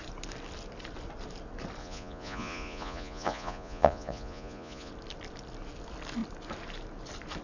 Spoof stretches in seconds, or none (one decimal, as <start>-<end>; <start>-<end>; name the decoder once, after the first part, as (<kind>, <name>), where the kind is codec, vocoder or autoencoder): 1.8-4.9 (vocoder, Vocos)